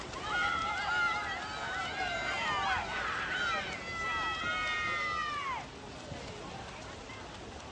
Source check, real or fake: real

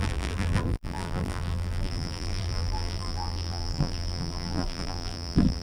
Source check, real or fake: fake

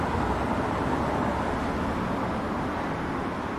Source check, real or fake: real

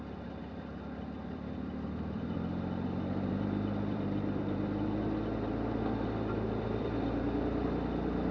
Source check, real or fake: fake